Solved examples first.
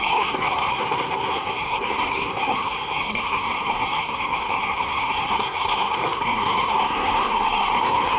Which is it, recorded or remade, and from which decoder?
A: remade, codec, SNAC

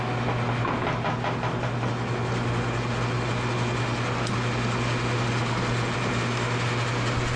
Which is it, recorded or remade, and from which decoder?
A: recorded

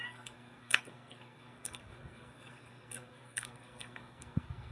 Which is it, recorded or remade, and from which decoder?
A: remade, codec, SNAC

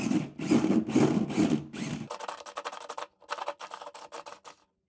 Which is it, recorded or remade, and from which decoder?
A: recorded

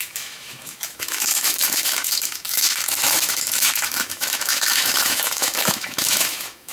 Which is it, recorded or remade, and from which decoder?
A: remade, autoencoder, DAC-VAE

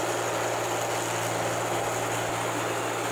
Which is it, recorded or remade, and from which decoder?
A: recorded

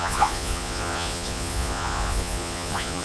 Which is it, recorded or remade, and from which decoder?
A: remade, vocoder, Vocos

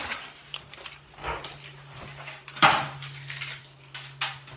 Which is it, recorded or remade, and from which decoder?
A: recorded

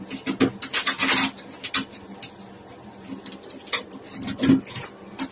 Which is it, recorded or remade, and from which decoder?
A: recorded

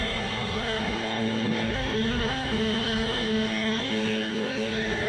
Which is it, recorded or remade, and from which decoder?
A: remade, codec, SNAC